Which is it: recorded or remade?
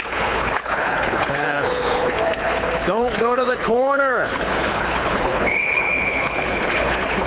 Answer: remade